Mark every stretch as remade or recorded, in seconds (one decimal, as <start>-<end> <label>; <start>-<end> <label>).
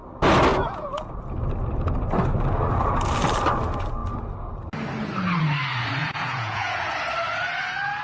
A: 0.0-0.5 recorded; 0.5-1.1 remade; 1.1-6.0 recorded; 6.0-6.9 remade; 6.9-8.0 recorded